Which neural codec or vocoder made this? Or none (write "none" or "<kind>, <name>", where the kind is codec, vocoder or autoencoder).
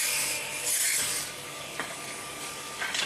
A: codec, DAC